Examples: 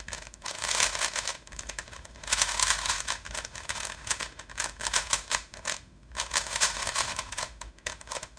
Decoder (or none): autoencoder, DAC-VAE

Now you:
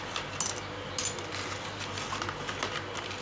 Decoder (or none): none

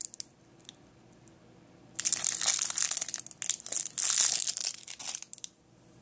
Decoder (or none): none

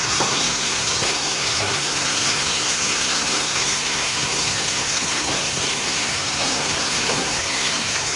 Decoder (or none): codec, SNAC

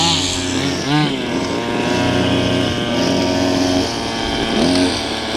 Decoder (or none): none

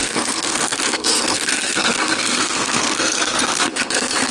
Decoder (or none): codec, SNAC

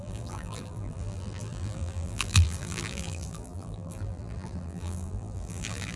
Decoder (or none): vocoder, BigVGAN v2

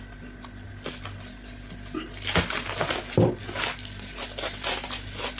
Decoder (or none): none